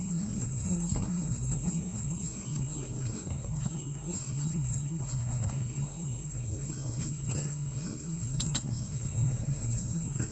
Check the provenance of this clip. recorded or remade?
remade